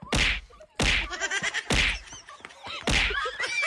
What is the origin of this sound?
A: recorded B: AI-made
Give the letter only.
A